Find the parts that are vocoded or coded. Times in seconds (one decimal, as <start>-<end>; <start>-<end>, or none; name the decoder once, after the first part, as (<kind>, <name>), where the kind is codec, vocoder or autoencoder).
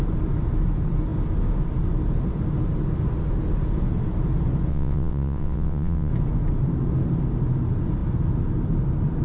4.7-6.1 (vocoder, WaveNeXt)